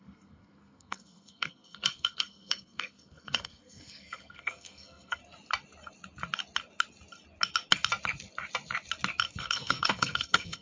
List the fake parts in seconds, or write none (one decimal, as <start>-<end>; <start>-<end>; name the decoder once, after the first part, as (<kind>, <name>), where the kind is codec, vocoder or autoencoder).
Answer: 0.0-5.2 (codec, SNAC); 9.4-10.6